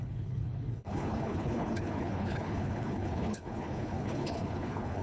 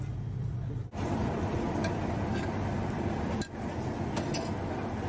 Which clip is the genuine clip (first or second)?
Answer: second